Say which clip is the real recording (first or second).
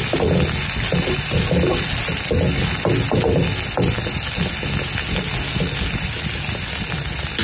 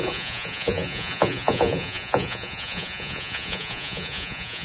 first